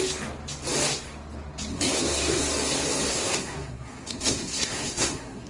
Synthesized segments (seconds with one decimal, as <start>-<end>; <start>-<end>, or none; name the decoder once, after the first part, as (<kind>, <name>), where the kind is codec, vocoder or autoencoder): 1.7-2.4 (codec, SNAC); 3.1-5.5